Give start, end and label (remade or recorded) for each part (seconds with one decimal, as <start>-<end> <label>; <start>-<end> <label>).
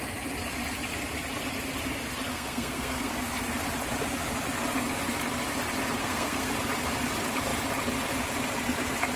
0.0-2.3 recorded; 2.3-3.1 remade; 3.1-6.0 recorded; 6.0-6.5 remade; 6.5-9.2 recorded